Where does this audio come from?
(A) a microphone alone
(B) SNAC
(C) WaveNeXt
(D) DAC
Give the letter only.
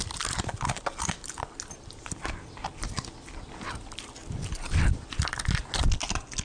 A